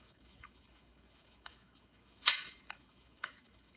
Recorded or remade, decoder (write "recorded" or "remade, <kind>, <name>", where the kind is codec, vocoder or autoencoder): remade, autoencoder, DAC-VAE